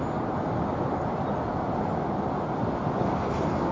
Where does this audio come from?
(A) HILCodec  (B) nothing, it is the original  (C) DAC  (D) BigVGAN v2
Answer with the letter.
B